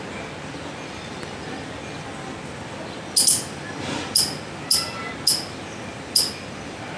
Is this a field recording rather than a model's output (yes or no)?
yes